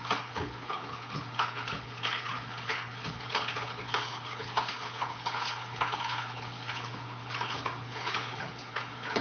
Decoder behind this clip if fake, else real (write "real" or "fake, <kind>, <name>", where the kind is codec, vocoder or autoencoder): fake, codec, HILCodec